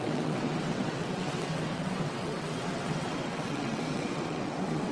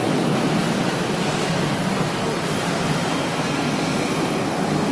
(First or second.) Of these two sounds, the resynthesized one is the first